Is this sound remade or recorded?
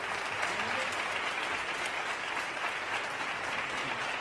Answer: recorded